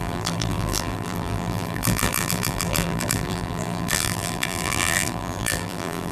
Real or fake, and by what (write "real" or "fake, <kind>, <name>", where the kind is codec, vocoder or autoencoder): fake, vocoder, BigVGAN v2